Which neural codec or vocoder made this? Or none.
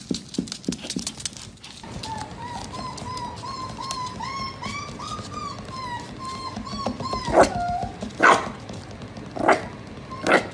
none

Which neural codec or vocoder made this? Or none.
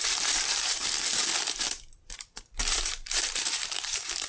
vocoder, BigVGAN v2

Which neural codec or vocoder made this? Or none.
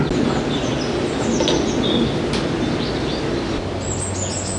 none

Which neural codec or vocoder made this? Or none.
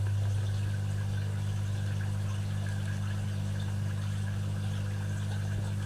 none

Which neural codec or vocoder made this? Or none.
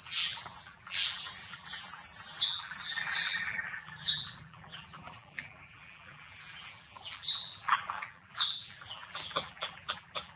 vocoder, BigVGAN v2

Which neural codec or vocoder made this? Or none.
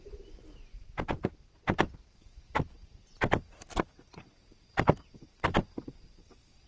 vocoder, BigVGAN v2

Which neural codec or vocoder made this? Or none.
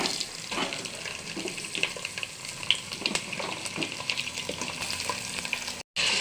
none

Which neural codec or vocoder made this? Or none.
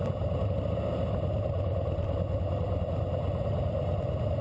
none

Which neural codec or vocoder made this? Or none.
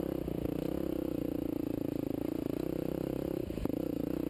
none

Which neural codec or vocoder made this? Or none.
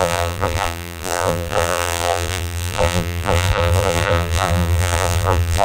vocoder, BigVGAN v2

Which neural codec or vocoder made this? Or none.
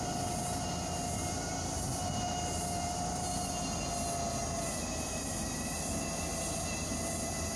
none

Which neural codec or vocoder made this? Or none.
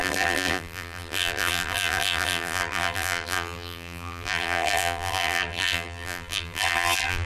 vocoder, BigVGAN v2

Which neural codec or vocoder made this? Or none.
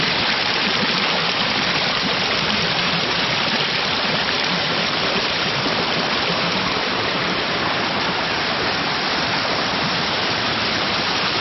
vocoder, BigVGAN v2